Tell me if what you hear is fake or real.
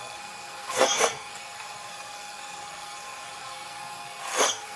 fake